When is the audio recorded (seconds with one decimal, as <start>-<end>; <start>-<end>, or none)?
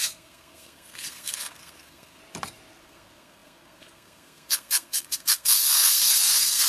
2.2-2.8